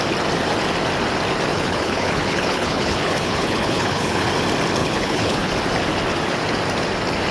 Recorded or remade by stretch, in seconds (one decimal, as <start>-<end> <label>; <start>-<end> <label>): 0.0-1.5 recorded; 1.5-4.3 remade; 4.3-4.8 recorded; 4.8-5.5 remade; 5.5-7.3 recorded